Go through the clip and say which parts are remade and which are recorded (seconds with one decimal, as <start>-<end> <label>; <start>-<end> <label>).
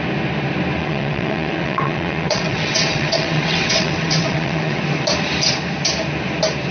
0.0-0.8 recorded; 0.8-4.8 remade; 4.8-6.7 recorded